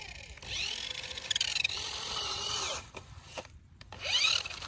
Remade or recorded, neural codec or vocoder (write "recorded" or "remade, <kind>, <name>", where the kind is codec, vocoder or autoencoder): remade, vocoder, BigVGAN v2